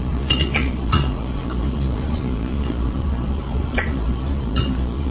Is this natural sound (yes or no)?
no